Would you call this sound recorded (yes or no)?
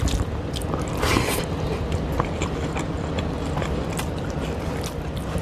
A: yes